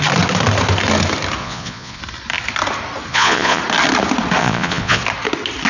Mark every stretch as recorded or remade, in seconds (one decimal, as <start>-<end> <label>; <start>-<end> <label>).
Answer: 0.0-1.4 recorded; 1.4-2.0 remade; 2.0-3.1 recorded; 3.1-3.6 remade; 3.6-4.4 recorded; 4.4-5.0 remade; 5.0-5.7 recorded